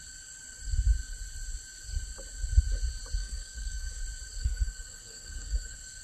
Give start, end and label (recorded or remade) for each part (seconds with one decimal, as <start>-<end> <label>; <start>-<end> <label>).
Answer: 0.0-3.2 recorded; 3.2-4.0 remade; 4.0-4.4 recorded; 4.4-6.0 remade